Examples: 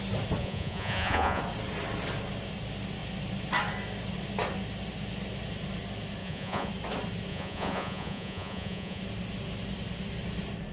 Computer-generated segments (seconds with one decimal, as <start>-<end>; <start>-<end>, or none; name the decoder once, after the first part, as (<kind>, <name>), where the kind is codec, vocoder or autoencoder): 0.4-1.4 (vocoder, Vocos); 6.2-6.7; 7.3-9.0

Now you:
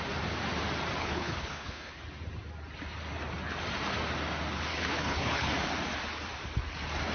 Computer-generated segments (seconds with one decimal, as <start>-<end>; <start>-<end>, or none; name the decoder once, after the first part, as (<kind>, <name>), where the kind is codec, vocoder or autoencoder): 1.0-2.0 (codec, HILCodec); 4.7-5.5

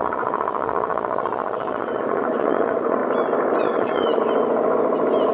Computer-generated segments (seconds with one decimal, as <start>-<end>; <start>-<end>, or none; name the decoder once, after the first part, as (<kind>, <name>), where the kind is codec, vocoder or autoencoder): 0.0-3.0 (vocoder, Vocos); 3.6-4.2

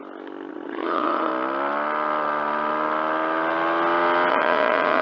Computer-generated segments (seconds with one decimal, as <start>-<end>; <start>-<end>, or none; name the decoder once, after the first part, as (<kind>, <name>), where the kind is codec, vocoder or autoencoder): 0.5-1.3 (vocoder, Vocos); 4.3-5.0